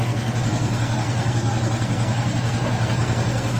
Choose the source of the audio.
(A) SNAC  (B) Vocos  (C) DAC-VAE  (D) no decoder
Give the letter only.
A